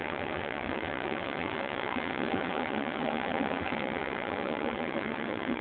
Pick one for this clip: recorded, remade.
remade